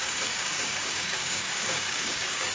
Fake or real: fake